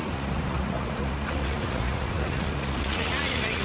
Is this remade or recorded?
remade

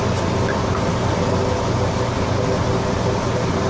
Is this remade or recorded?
recorded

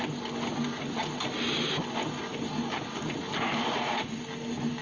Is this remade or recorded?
recorded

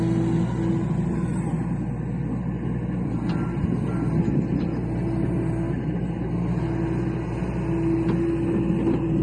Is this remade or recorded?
recorded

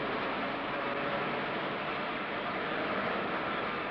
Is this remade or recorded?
recorded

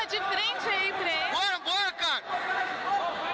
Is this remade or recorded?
recorded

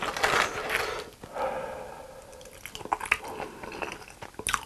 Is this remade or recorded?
recorded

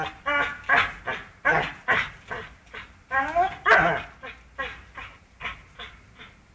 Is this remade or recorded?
recorded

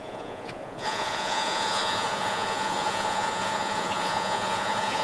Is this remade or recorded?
remade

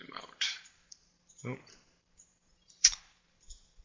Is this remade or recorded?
remade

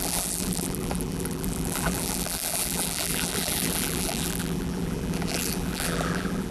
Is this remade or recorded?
remade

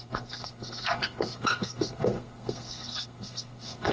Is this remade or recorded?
remade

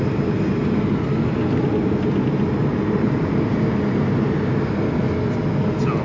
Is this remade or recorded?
recorded